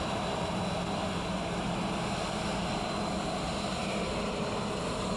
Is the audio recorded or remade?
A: recorded